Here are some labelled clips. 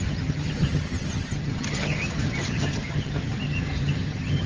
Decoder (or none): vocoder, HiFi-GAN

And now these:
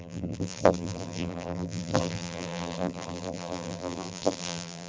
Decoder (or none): vocoder, BigVGAN v2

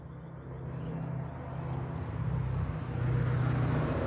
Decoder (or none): none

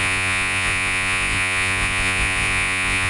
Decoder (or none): vocoder, Vocos